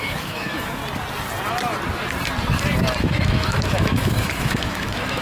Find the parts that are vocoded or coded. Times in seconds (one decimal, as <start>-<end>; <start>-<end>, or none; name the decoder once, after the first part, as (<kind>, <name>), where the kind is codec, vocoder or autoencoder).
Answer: 0.0-0.8 (autoencoder, DAC-VAE); 3.0-5.2